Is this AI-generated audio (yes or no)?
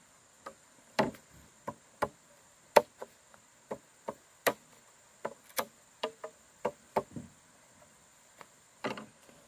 yes